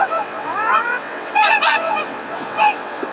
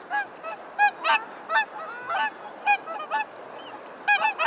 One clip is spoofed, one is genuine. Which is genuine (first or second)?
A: second